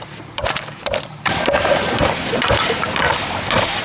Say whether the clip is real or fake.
fake